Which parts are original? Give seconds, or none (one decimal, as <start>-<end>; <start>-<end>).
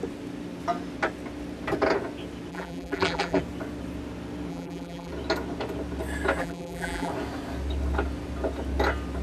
0.0-2.5; 3.4-4.5; 5.1-6.4; 7.1-9.2